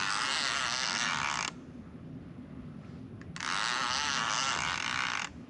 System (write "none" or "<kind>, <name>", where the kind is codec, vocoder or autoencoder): none